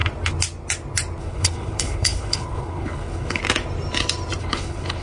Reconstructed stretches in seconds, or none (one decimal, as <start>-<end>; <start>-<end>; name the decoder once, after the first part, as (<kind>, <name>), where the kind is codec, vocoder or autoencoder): 1.2-3.4 (codec, HILCodec); 4.4-5.0

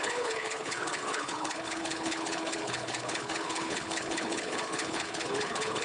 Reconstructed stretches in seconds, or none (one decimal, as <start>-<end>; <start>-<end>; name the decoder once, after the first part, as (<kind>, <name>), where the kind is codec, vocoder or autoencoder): 0.0-5.8 (codec, HILCodec)

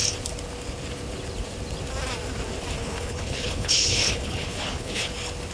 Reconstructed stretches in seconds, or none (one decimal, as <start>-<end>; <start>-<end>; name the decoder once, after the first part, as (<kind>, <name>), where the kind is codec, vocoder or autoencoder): 2.8-5.1 (codec, HILCodec)

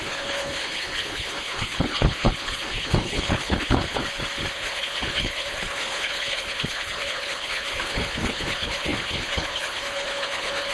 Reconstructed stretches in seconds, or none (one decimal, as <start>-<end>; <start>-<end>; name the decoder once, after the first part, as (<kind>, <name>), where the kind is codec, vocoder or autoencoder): 0.0-4.0 (codec, HILCodec); 4.5-10.7

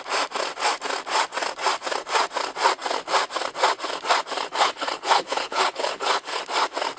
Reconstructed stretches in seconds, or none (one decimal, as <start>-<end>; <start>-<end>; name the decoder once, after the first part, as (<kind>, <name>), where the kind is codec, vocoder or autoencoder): 4.5-6.4 (codec, HILCodec)

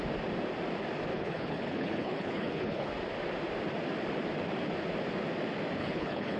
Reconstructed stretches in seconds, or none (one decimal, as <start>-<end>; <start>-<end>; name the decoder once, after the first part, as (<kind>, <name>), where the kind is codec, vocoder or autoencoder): 1.1-2.9 (codec, HILCodec); 5.8-6.4

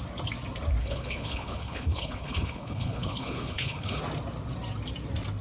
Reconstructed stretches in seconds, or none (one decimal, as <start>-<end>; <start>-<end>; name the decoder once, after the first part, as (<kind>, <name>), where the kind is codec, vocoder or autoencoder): 0.8-4.0 (codec, HILCodec)

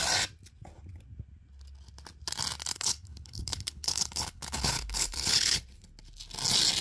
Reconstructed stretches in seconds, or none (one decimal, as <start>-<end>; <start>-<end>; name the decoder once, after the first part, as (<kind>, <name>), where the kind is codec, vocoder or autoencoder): 2.7-5.6 (codec, HILCodec)